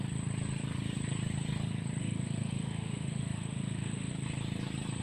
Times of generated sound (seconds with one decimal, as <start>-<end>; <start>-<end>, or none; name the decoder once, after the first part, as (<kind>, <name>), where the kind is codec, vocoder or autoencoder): 2.0-4.1 (autoencoder, DAC-VAE)

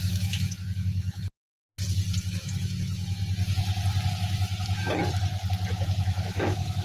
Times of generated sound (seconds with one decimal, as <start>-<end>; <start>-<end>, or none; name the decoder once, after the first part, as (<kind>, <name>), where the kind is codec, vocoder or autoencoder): 0.0-1.6 (autoencoder, DAC-VAE); 2.2-3.2; 4.1-5.0; 5.7-6.8

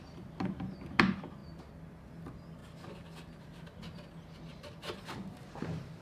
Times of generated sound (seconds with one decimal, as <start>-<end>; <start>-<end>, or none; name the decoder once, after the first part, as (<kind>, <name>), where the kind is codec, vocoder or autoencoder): none

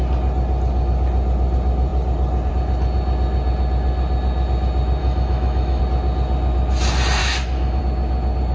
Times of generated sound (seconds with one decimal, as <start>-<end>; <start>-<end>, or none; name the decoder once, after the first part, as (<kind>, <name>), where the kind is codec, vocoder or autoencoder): 5.0-5.8 (autoencoder, DAC-VAE); 7.2-7.8

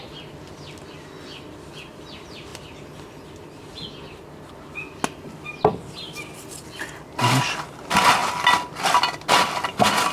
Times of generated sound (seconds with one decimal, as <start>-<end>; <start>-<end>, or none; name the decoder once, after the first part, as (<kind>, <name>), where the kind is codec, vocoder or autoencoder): none

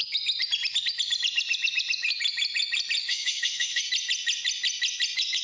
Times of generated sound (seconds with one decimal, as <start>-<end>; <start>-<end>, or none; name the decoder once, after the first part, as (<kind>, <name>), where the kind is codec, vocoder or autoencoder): 3.0-3.8 (autoencoder, DAC-VAE)

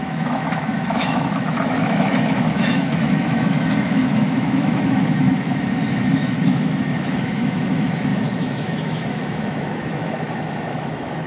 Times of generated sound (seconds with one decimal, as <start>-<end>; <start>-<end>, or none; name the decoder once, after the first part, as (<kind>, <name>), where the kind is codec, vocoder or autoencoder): 0.0-11.3 (autoencoder, DAC-VAE)

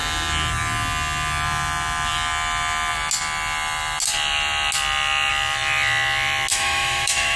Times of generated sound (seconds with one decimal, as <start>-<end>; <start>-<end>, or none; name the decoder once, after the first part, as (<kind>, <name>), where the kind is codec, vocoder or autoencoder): 6.5-7.4 (autoencoder, DAC-VAE)